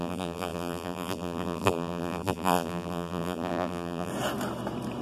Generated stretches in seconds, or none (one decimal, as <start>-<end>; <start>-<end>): 0.0-4.1